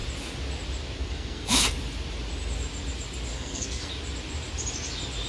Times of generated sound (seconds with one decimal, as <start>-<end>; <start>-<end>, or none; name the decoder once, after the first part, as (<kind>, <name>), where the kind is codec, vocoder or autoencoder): 1.0-1.7 (codec, SNAC); 3.3-3.9

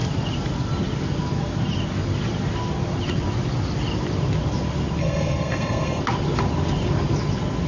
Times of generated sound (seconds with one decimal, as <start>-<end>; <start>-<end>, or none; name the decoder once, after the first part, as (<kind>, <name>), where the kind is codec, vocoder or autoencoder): 5.0-6.0 (codec, SNAC)

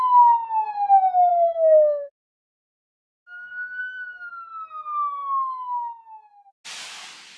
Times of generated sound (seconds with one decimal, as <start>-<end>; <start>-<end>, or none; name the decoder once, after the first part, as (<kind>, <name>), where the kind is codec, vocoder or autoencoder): 1.3-3.8 (codec, SNAC)

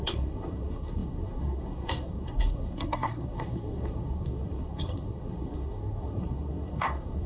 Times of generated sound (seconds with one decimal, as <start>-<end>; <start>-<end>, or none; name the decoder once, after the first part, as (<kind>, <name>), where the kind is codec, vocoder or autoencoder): 0.0-7.3 (codec, SNAC)

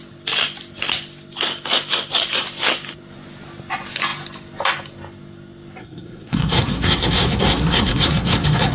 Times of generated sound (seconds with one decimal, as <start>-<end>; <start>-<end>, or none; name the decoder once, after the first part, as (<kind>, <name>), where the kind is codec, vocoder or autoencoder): 5.8-8.7 (codec, SNAC)

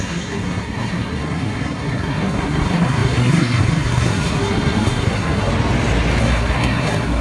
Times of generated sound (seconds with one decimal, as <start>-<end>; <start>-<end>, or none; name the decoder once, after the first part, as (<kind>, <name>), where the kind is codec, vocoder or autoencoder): 0.0-5.5 (codec, SNAC); 6.2-7.2

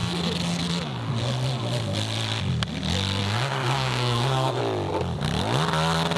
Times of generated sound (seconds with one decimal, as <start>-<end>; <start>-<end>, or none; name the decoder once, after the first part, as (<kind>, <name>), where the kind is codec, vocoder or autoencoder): 3.2-4.6 (codec, SNAC)